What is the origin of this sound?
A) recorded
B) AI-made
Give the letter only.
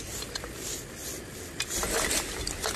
A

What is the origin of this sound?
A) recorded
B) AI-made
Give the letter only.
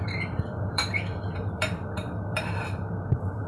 B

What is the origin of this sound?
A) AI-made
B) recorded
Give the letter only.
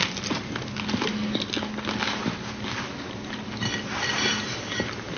B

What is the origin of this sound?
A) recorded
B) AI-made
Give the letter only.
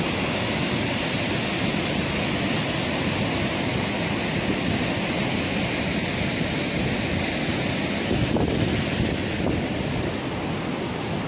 A